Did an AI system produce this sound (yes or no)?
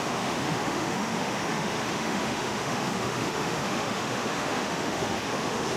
yes